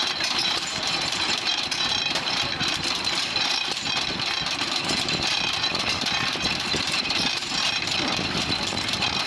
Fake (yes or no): yes